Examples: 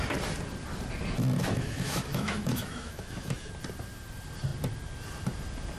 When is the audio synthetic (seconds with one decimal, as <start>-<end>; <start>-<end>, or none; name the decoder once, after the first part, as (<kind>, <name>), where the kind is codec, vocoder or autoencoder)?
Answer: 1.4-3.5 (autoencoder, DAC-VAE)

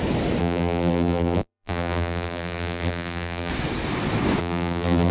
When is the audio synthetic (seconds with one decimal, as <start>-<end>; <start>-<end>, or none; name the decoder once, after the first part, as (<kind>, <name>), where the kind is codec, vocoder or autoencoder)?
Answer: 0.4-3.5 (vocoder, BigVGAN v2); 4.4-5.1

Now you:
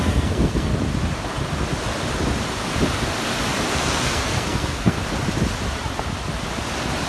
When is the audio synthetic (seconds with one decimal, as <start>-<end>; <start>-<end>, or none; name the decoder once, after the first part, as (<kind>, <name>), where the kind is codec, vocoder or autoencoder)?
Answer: 0.0-0.7 (codec, SNAC); 3.7-5.0